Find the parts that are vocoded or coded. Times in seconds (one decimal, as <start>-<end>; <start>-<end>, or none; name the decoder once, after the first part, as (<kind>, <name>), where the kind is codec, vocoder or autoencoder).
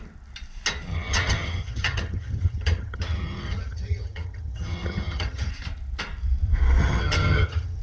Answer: 0.9-5.5 (vocoder, HiFi-GAN); 6.8-7.8